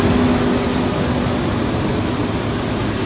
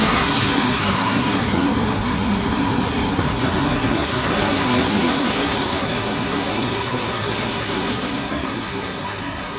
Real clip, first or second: first